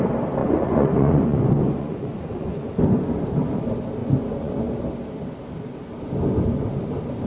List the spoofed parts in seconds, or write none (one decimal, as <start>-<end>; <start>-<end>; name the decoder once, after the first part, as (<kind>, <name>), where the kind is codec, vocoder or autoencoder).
0.4-2.7 (vocoder, Vocos); 4.0-4.6